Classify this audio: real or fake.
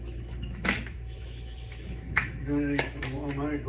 fake